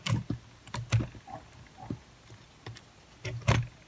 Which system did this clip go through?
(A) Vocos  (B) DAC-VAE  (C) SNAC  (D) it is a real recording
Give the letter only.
D